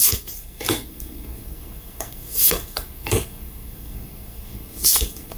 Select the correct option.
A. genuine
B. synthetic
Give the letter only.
B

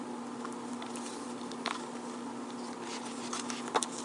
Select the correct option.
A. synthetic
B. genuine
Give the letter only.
B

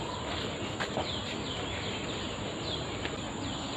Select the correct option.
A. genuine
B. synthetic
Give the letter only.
A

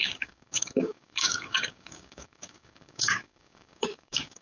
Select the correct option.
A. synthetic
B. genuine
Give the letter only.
A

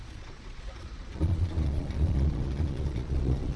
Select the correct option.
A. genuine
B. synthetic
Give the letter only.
B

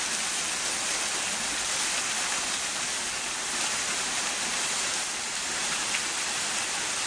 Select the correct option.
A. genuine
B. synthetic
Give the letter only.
A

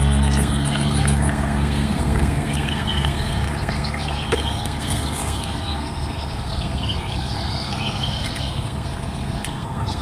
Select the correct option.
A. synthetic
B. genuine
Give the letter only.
A